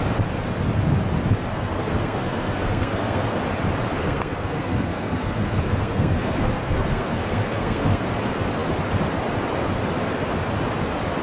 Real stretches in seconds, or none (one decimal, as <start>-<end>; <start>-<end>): 0.0-1.5; 3.4-4.0; 8.0-11.2